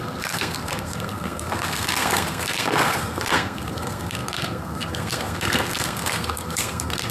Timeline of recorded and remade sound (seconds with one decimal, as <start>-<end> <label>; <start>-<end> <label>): 0.0-7.1 remade